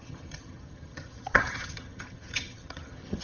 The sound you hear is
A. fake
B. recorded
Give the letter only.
A